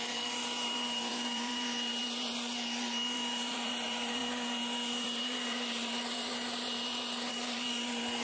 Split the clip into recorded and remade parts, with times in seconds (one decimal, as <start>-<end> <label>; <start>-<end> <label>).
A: 0.0-8.2 remade